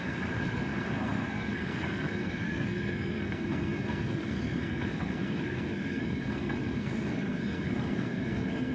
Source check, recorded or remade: remade